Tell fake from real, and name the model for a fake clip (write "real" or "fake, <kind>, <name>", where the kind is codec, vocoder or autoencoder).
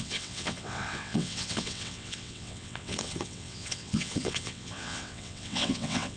fake, vocoder, WaveNeXt